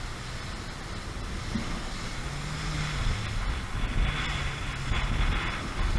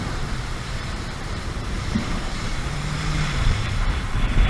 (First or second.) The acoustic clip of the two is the first